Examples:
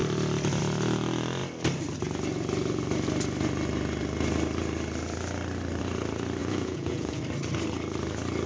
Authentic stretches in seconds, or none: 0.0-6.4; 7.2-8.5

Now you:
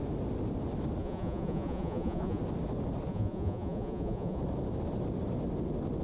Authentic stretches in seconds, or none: 0.0-1.0; 2.4-3.1; 4.4-6.0

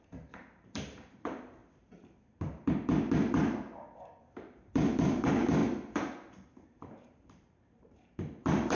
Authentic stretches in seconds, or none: 1.6-4.3; 5.6-6.5

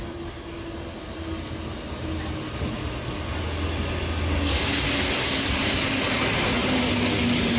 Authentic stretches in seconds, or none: 0.0-7.6

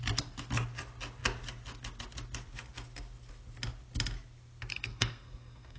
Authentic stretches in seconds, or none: 0.0-4.7

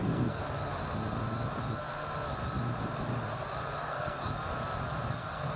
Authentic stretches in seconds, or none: 0.4-3.8; 4.2-5.1